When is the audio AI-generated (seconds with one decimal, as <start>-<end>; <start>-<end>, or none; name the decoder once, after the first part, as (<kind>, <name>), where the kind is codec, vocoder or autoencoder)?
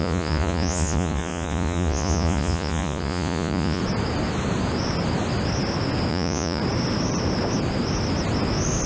0.0-3.8 (vocoder, Vocos); 6.1-6.6